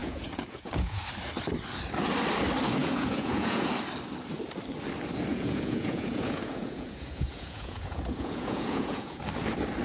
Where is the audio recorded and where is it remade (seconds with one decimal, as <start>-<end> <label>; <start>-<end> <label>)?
0.0-1.0 remade; 1.0-2.8 recorded; 2.8-3.7 remade; 3.7-5.3 recorded; 5.3-9.2 remade; 9.2-9.8 recorded